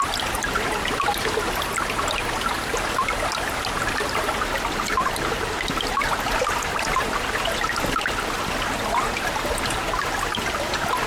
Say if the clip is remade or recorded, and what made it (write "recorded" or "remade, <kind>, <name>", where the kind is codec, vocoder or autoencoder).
recorded